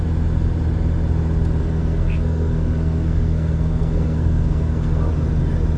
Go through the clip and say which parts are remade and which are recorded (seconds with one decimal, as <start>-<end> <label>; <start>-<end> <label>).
0.0-1.6 recorded; 1.6-5.1 remade; 5.1-5.8 recorded